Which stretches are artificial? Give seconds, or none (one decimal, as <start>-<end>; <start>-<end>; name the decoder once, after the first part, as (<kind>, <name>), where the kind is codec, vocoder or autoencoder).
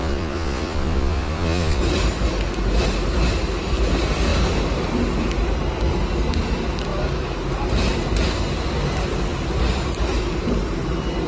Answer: 0.0-1.8 (vocoder, Vocos)